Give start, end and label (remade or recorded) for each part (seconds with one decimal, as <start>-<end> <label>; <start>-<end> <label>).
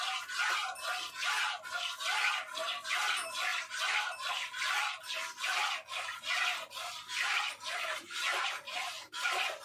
0.0-4.8 recorded; 4.8-5.5 remade; 5.5-8.3 recorded; 8.3-9.1 remade; 9.1-9.6 recorded